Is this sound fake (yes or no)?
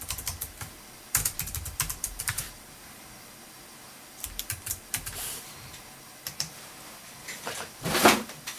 yes